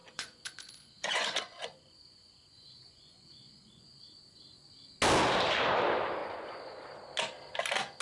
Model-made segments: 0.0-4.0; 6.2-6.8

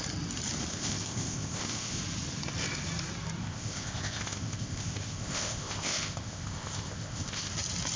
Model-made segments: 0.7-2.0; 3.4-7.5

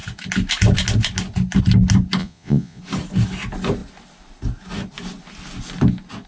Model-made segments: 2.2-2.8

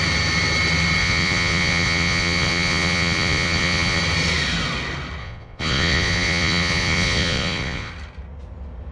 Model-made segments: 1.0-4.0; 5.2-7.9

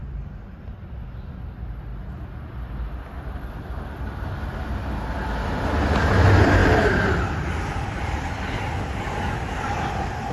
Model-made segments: 6.6-8.3